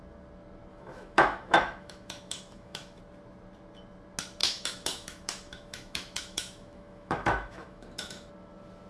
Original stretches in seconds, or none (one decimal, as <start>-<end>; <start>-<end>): 0.0-0.7; 3.0-4.4; 8.3-8.9